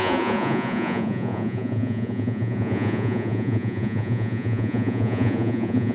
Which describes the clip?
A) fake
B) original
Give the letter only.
A